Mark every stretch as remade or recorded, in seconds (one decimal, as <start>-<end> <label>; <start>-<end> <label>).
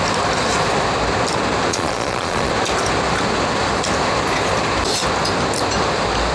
0.0-1.7 recorded; 1.7-2.5 remade; 2.5-6.3 recorded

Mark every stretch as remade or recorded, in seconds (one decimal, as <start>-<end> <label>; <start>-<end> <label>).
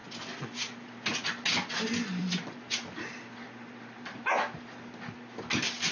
0.0-5.9 recorded